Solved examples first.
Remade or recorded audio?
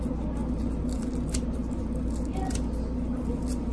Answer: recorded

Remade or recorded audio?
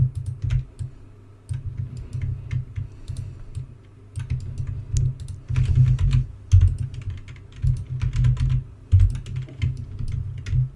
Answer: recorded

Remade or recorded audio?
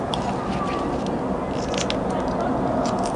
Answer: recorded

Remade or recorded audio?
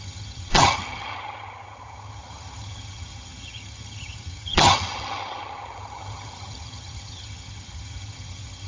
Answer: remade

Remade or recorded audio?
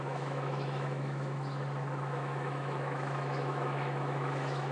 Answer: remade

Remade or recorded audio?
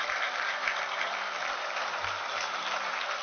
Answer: recorded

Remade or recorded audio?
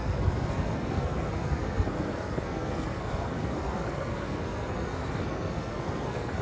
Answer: remade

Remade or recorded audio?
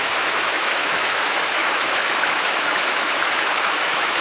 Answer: remade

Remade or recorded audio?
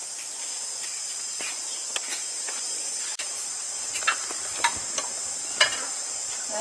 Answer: recorded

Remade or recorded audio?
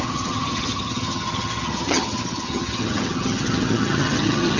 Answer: remade